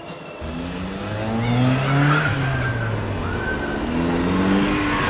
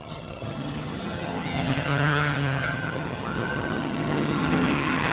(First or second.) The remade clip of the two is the second